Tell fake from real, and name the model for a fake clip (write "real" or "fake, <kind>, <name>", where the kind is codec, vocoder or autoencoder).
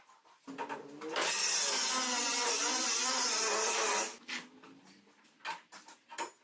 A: real